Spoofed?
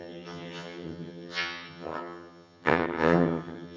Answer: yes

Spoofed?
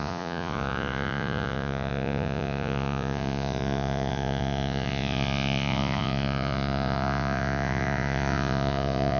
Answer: yes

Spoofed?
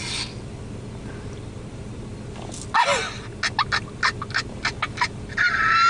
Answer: no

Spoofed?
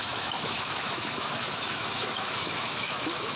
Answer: yes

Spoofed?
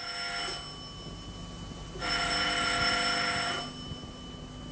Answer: no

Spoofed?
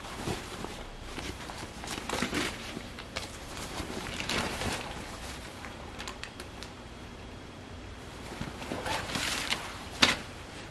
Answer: yes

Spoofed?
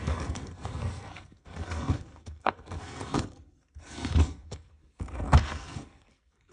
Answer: yes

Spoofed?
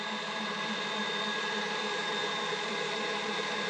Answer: yes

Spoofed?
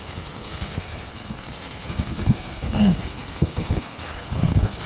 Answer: yes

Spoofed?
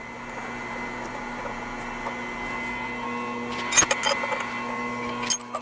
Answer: no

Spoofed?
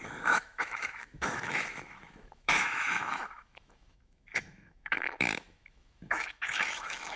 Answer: yes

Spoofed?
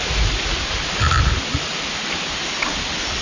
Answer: no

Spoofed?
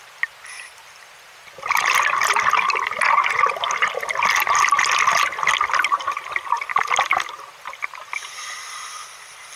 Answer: no